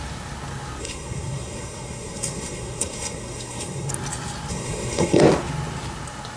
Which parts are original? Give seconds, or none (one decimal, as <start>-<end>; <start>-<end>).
0.0-0.8; 3.9-4.5; 5.2-6.4